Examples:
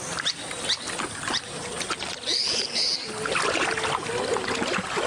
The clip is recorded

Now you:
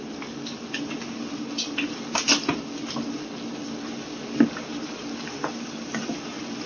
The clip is recorded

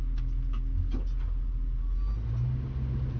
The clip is recorded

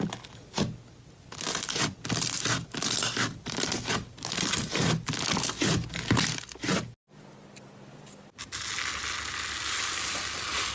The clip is recorded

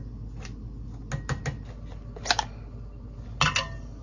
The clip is recorded